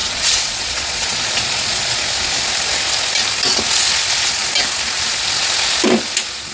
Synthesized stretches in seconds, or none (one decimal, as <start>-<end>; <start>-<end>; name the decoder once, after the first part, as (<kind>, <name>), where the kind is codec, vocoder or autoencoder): 0.0-2.0 (vocoder, Vocos)